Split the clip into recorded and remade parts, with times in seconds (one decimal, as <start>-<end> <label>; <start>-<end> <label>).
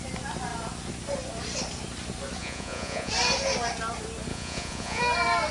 0.0-2.4 recorded; 2.4-3.1 remade; 3.1-4.3 recorded; 4.3-5.0 remade; 5.0-5.5 recorded